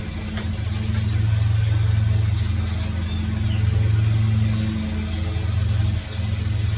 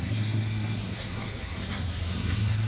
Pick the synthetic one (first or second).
second